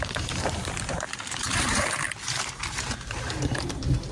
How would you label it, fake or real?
fake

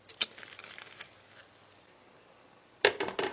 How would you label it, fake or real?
real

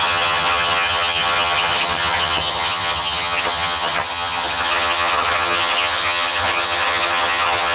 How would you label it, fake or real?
fake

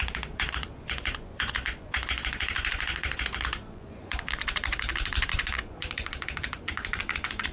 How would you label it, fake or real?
fake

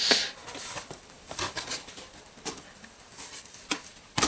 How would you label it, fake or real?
real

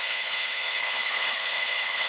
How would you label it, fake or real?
fake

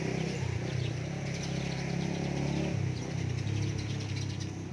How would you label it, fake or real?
fake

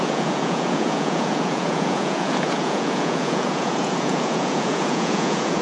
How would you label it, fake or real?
fake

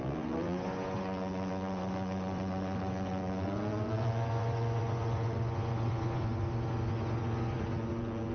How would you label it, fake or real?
fake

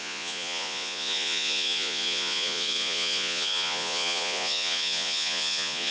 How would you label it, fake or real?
fake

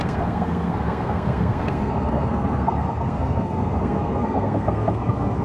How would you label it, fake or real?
fake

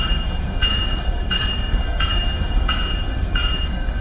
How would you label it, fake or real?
fake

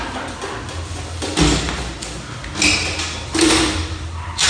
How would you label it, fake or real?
real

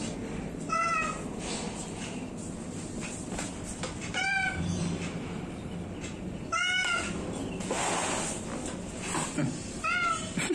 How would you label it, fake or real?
real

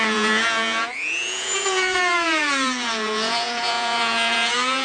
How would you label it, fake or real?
fake